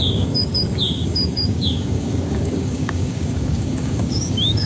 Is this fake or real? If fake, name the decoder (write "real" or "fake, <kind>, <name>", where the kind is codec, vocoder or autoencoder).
fake, codec, DAC